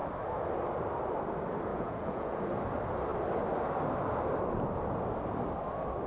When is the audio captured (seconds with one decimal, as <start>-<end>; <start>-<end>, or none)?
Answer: 0.0-1.7; 2.4-6.1